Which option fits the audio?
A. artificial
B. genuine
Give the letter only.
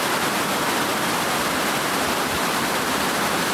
B